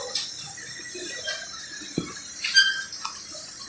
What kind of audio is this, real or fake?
real